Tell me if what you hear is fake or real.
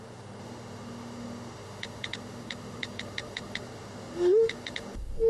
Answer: fake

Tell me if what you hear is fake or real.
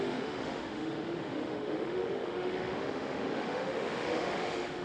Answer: fake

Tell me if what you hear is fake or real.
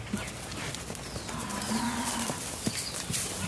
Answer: real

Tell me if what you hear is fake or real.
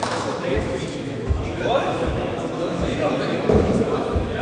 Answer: fake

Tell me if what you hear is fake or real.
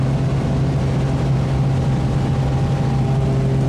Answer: real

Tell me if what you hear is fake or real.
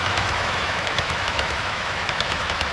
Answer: fake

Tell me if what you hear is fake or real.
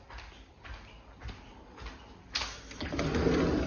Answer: real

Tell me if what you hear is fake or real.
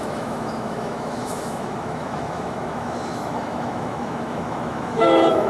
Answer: fake